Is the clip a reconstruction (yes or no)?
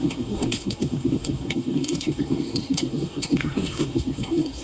yes